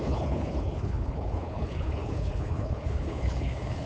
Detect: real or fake fake